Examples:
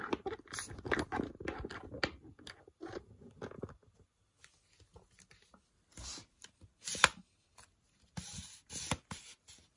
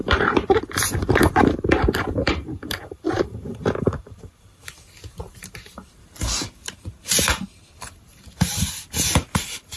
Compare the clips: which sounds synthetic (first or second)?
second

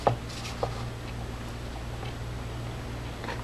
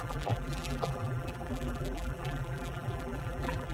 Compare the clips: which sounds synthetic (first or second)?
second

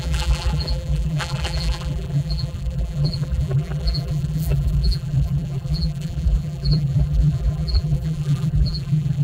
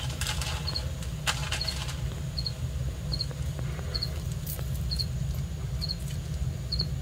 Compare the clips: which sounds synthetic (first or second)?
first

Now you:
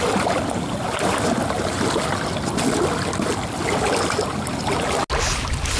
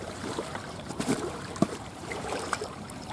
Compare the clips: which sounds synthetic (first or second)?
second